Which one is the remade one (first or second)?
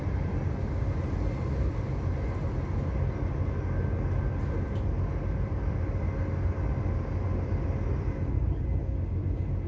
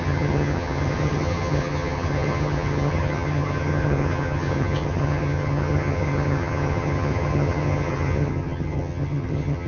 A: second